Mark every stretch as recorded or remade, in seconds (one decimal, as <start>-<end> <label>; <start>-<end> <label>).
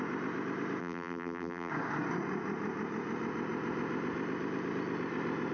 0.0-0.8 recorded; 0.8-1.7 remade; 1.7-5.5 recorded